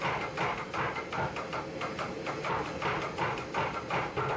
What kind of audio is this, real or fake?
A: real